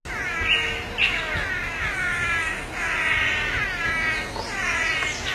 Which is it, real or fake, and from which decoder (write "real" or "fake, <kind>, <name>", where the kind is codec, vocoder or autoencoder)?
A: real